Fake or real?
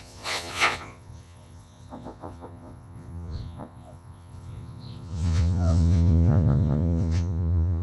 fake